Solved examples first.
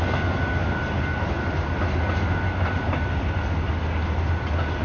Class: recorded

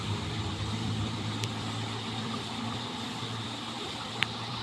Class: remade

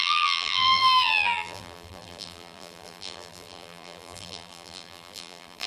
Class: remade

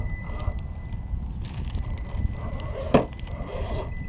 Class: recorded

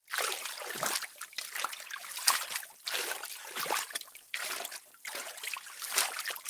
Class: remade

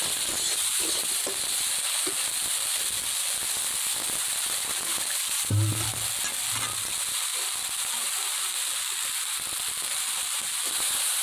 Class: recorded